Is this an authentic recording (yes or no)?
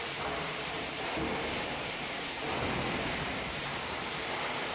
no